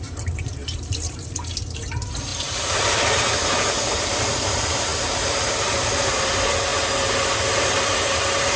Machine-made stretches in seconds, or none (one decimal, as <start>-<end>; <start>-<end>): 0.0-6.7; 7.5-8.6